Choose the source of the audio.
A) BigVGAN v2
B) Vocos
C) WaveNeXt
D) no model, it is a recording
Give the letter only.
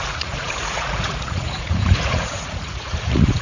B